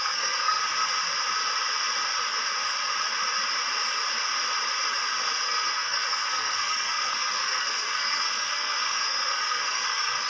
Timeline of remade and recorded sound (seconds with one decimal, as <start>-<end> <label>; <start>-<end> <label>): 0.0-0.6 remade; 0.6-5.2 recorded; 5.2-10.3 remade